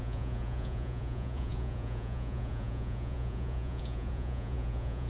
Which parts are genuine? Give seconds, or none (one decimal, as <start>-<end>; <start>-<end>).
none